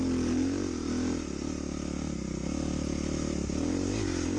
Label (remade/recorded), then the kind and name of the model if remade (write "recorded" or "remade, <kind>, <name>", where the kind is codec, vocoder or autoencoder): recorded